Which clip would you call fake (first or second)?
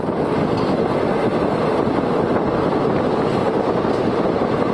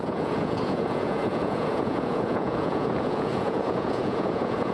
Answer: second